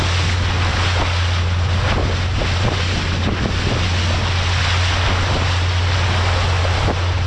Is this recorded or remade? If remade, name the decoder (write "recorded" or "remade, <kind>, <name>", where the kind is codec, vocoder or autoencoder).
recorded